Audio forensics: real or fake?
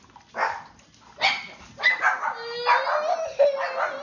real